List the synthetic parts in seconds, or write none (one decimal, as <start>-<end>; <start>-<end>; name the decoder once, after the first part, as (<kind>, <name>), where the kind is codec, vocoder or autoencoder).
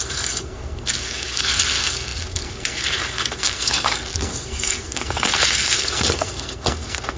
0.0-7.2 (codec, SNAC)